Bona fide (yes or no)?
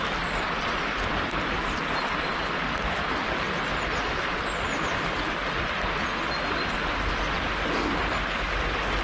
yes